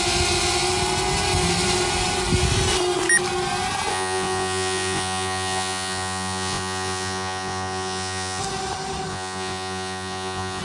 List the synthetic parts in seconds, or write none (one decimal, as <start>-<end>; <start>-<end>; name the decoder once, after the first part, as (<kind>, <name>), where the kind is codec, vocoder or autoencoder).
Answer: 3.9-8.4 (vocoder, Vocos); 9.1-10.6